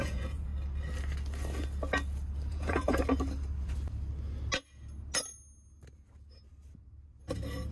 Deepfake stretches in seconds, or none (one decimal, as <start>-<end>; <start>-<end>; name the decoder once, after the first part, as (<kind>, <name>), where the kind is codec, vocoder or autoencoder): 0.0-0.5 (vocoder, Vocos); 2.5-3.0

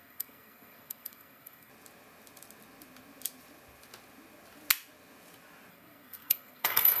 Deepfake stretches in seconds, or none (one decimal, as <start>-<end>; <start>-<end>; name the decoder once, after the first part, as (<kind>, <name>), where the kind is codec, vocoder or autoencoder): 0.0-1.7 (codec, SNAC); 5.7-7.0